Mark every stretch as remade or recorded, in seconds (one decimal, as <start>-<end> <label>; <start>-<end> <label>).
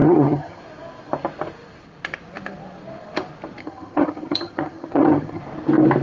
0.0-0.6 remade; 0.6-3.6 recorded; 3.6-5.4 remade; 5.4-6.0 recorded